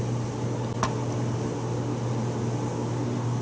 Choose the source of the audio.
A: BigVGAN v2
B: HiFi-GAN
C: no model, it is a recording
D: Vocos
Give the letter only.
C